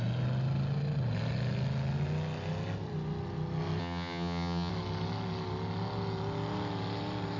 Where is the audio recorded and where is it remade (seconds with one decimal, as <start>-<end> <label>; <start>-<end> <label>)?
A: 0.0-3.8 recorded; 3.8-4.7 remade; 4.7-7.4 recorded